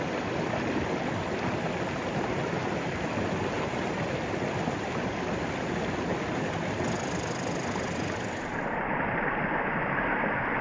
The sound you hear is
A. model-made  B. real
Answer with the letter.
B